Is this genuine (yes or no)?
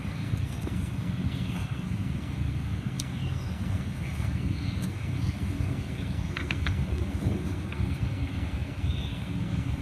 no